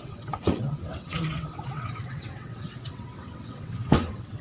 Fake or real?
fake